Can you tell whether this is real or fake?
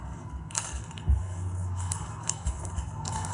fake